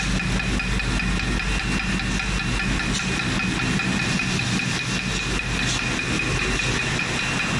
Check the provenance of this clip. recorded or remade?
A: recorded